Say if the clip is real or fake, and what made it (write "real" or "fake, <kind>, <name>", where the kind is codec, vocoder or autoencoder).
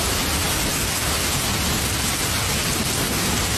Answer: real